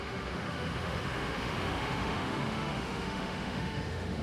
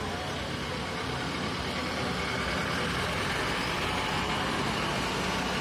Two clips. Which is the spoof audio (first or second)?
first